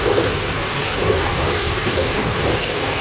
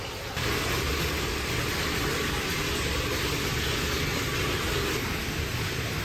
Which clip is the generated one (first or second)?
first